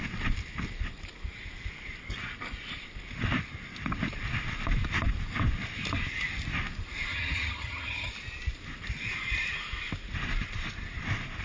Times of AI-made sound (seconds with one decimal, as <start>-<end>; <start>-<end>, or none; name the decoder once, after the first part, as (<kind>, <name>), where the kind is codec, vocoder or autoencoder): 7.1-8.1 (vocoder, HiFi-GAN)